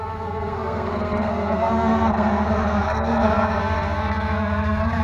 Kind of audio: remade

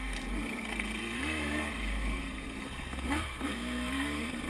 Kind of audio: remade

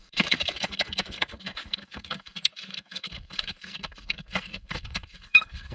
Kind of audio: remade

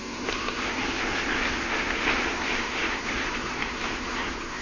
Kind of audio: remade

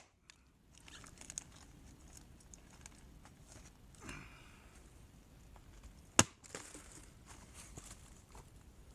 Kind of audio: recorded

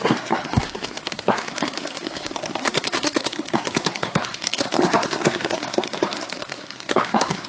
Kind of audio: remade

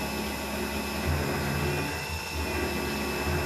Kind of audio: recorded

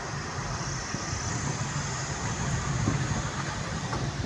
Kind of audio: recorded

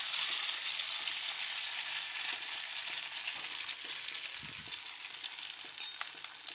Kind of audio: recorded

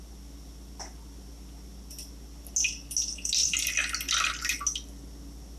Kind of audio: recorded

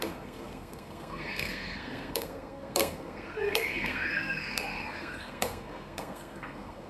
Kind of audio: remade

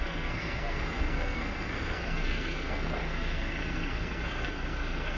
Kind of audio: remade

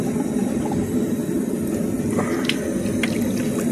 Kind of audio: recorded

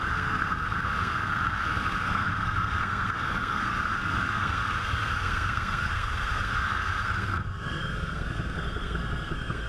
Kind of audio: remade